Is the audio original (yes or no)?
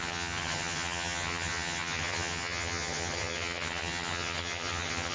no